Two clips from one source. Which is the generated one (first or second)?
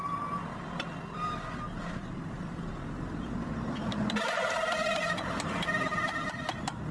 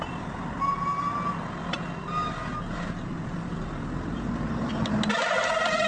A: first